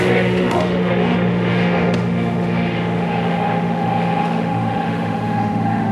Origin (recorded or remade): remade